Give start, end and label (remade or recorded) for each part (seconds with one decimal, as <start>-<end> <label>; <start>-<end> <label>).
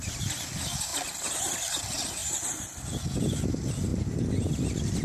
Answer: 0.0-5.0 recorded